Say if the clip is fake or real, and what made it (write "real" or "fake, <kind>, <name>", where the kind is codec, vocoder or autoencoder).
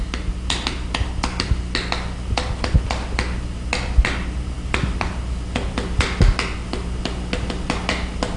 real